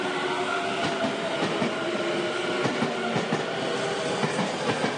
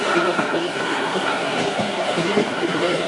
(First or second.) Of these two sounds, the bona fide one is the first